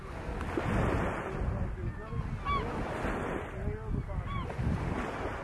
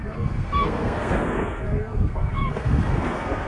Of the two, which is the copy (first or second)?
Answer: second